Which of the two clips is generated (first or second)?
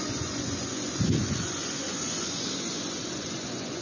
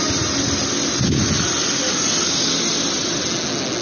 first